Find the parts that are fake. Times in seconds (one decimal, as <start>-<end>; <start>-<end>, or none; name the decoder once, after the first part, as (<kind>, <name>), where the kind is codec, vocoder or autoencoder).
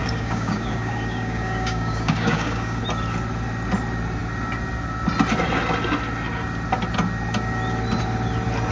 0.0-2.8 (codec, DAC)